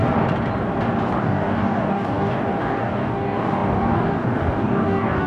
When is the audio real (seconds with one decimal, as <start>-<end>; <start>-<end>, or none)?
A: 0.0-1.2